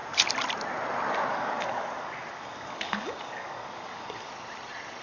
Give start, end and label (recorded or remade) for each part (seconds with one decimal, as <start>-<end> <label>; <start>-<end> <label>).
0.0-1.3 recorded; 1.3-4.3 remade; 4.3-5.0 recorded